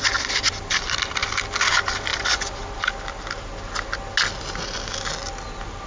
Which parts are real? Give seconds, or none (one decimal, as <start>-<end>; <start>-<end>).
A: 0.0-2.1; 2.9-5.9